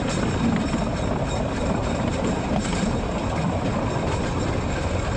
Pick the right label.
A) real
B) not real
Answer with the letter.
A